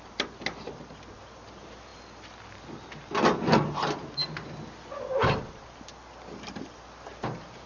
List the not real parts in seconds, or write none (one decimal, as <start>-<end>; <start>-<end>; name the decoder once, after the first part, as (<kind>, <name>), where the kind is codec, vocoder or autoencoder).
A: none